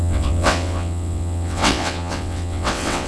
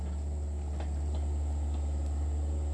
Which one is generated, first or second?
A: first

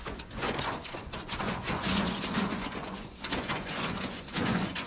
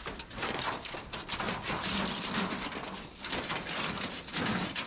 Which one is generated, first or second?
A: first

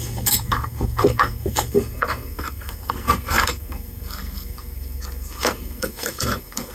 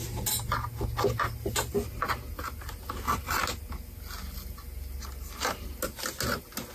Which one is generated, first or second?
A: first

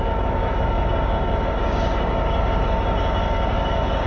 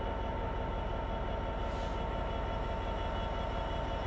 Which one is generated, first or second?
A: first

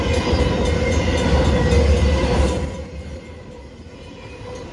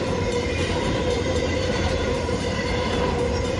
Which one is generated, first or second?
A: second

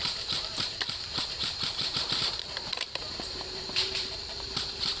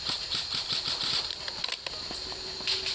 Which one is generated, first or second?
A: first